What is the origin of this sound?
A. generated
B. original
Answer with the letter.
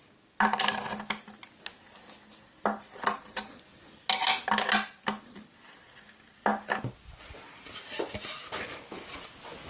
B